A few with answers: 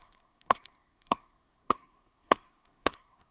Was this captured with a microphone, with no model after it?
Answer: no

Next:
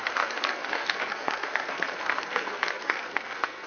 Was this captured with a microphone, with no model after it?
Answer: no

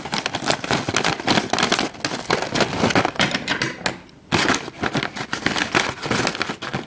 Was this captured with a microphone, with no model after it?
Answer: yes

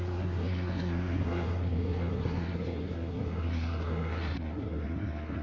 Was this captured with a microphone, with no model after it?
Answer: no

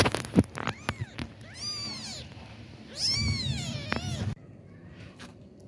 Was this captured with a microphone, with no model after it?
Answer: yes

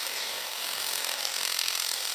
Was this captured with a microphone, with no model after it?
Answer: no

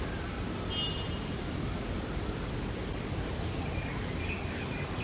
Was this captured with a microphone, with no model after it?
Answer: yes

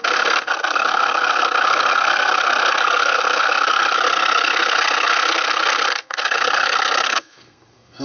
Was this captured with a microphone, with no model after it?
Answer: no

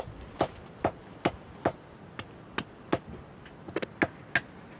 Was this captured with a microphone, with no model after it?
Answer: yes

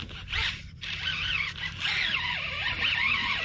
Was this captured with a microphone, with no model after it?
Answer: yes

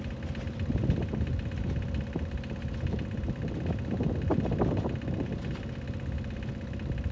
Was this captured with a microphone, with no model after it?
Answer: yes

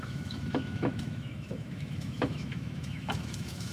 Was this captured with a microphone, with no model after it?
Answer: no